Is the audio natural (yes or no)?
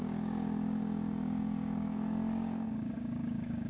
no